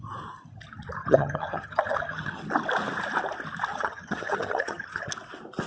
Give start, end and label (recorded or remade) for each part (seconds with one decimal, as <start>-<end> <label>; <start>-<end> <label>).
0.0-1.0 recorded; 1.0-2.4 remade; 2.4-3.7 recorded; 3.7-5.1 remade; 5.1-5.7 recorded